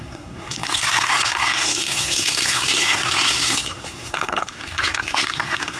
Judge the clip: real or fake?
fake